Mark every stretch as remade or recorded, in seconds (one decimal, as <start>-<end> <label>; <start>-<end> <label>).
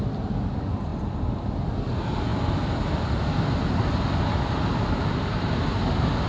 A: 0.0-6.3 recorded